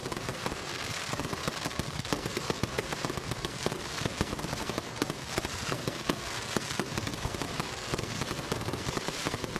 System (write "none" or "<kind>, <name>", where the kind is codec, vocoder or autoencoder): codec, SNAC